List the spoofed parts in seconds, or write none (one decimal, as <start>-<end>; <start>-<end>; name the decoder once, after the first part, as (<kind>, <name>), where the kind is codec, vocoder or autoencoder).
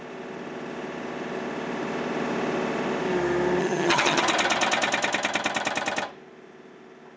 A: 3.6-4.2 (vocoder, HiFi-GAN)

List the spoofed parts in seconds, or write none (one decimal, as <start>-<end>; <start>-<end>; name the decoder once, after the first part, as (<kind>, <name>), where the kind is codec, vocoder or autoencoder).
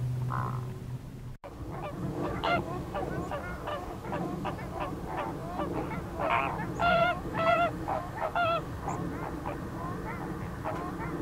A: 2.0-3.1 (codec, DAC); 3.7-4.5; 6.8-8.8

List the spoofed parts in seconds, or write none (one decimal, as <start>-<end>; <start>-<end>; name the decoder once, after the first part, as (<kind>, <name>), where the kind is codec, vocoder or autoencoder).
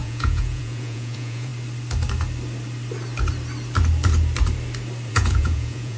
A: 0.0-1.5 (vocoder, Vocos); 5.1-6.0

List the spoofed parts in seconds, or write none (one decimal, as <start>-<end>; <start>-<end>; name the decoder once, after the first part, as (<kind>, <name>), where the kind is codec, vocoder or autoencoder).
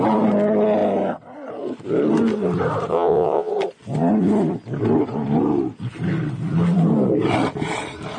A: 2.9-3.5 (vocoder, WaveNeXt)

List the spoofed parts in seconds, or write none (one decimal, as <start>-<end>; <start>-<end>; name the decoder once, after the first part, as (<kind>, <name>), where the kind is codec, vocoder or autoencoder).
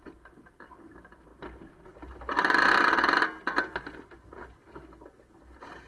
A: none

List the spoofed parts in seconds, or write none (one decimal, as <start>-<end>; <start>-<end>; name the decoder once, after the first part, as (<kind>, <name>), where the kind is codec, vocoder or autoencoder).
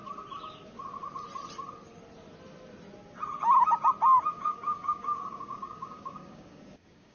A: 4.3-7.1 (codec, DAC)